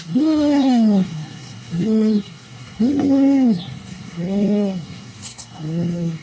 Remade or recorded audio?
remade